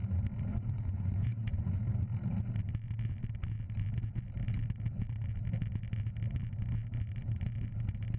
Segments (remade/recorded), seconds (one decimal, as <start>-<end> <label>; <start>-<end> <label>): 0.0-0.5 recorded; 0.5-1.8 remade; 1.8-8.2 recorded